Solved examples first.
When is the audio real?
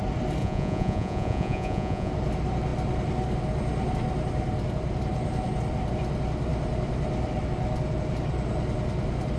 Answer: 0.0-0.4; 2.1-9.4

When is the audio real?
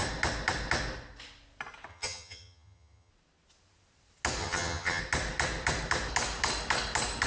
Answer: 0.0-1.9; 3.1-4.4; 5.0-7.3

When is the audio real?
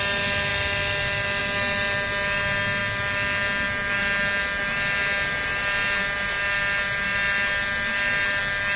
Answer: 0.0-8.8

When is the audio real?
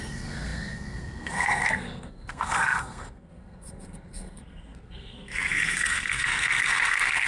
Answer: none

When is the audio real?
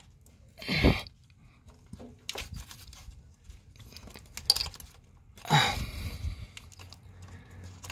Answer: 0.0-7.9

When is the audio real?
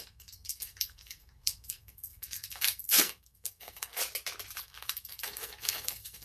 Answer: 4.0-4.6